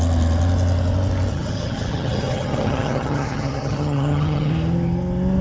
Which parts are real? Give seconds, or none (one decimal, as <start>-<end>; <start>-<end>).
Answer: 0.0-1.3; 4.5-5.4